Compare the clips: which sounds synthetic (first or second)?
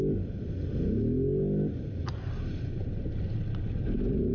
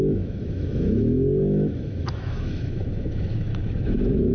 second